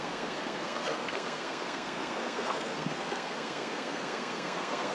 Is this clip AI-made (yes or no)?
yes